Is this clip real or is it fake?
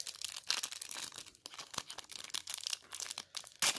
real